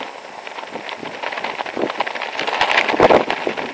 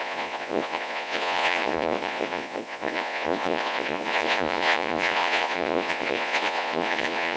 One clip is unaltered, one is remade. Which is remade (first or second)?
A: second